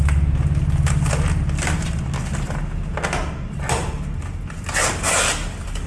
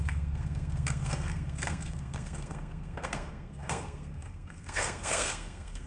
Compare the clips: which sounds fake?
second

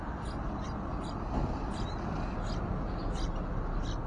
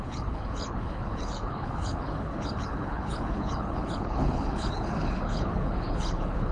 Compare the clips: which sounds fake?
second